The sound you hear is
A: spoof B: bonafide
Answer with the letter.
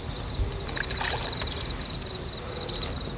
B